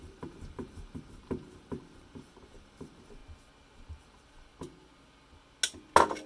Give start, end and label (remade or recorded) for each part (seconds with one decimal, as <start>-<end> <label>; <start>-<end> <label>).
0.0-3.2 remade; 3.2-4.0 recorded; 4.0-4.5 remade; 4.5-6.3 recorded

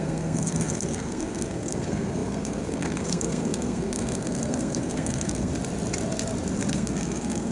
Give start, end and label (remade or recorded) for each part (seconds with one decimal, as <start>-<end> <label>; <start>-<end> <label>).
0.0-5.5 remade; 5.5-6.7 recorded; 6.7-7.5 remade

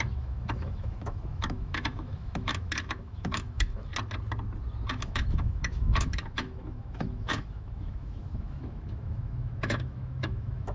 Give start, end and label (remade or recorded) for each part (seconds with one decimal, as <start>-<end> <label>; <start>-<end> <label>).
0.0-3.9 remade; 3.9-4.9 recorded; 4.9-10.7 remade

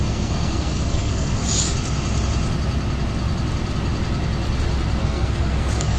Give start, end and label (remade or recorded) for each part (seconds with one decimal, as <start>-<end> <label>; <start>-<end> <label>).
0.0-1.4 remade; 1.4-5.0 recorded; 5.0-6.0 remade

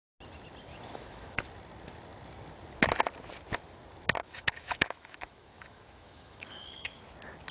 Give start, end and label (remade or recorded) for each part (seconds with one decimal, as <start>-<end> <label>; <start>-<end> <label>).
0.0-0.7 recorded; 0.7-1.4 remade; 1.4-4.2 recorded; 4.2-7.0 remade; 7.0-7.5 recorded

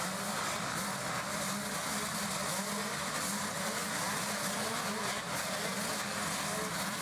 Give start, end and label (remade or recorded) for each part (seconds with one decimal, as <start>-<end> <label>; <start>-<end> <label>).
0.0-7.0 recorded

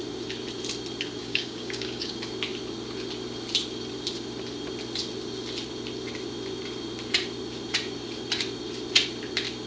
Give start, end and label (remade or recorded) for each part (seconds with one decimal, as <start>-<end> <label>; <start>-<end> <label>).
0.0-1.2 recorded; 1.2-2.1 remade; 2.1-9.7 recorded

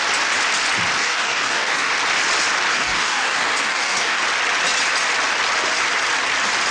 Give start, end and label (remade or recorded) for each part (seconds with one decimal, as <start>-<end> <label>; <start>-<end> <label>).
0.0-1.0 recorded; 1.0-1.9 remade; 1.9-2.7 recorded; 2.7-4.2 remade; 4.2-6.7 recorded